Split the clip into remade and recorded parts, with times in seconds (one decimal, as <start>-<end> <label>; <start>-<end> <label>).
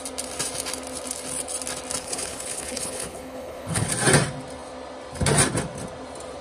0.0-2.0 recorded; 2.0-3.9 remade; 3.9-6.4 recorded